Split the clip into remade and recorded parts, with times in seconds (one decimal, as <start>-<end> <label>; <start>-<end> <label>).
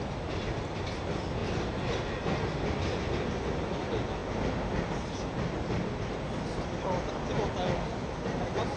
0.0-8.8 recorded